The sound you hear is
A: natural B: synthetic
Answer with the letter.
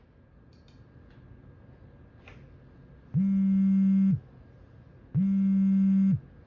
A